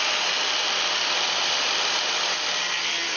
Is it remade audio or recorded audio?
remade